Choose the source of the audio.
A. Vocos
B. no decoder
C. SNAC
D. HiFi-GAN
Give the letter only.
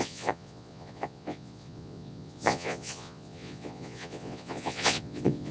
A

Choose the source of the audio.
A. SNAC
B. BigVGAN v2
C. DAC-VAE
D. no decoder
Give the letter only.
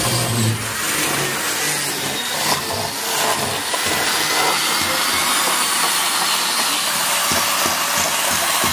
D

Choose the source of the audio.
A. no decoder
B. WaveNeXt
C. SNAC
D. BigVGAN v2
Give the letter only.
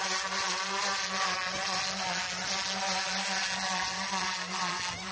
A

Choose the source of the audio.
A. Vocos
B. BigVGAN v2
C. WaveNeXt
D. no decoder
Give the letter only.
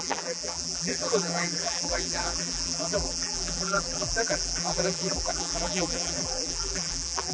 B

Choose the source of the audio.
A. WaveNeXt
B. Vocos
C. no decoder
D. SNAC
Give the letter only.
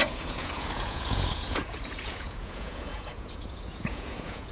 B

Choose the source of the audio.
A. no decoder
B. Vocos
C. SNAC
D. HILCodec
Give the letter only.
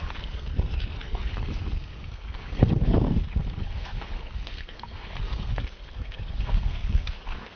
C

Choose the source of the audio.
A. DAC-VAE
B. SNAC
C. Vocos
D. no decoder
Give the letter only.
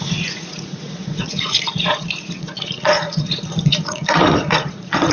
C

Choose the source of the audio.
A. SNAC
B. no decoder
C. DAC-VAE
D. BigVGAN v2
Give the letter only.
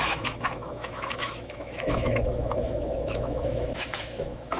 C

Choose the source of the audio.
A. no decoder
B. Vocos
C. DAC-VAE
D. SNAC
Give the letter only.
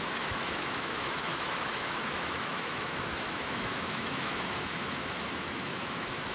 C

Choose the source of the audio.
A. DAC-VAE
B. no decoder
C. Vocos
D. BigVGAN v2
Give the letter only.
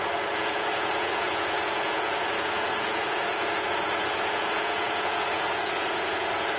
C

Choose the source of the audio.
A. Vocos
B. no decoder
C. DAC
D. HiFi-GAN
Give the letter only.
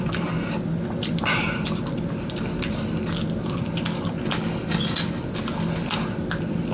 B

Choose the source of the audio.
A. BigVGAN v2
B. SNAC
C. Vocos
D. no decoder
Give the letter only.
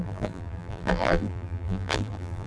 A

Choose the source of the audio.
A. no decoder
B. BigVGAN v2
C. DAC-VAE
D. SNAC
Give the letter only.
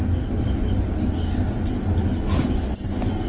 A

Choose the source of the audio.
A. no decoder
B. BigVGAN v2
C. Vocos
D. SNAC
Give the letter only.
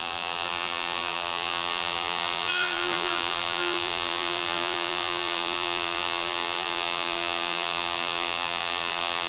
B